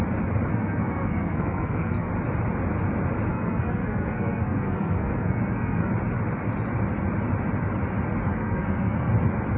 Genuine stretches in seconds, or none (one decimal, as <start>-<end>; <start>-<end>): 0.0-0.5; 2.1-3.3; 5.9-8.3; 9.1-9.6